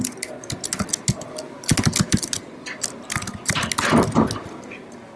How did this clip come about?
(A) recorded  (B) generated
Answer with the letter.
A